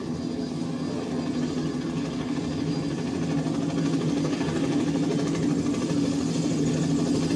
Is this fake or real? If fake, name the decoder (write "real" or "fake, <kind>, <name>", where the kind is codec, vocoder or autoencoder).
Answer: real